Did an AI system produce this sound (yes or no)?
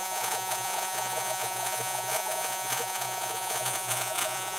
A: yes